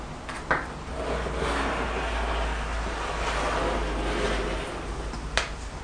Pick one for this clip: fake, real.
real